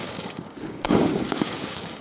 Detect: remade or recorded remade